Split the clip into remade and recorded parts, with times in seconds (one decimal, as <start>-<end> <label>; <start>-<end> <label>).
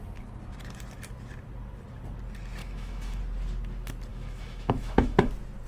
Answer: 0.0-2.6 recorded; 2.6-3.2 remade; 3.2-4.1 recorded; 4.1-5.3 remade; 5.3-5.7 recorded